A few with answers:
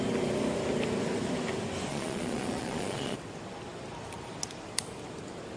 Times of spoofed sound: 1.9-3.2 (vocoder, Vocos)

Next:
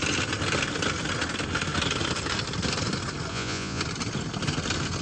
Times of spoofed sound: 3.3-3.8 (vocoder, Vocos)

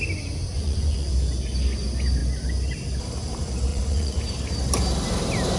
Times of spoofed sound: 0.5-1.1 (vocoder, Vocos); 3.7-4.2

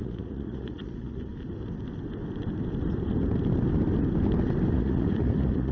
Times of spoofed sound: 0.0-1.3 (vocoder, Vocos); 4.7-5.7

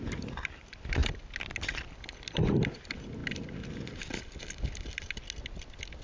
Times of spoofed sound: none